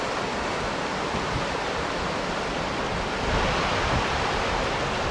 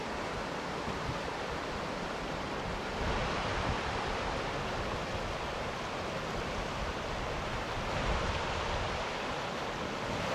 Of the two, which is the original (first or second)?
first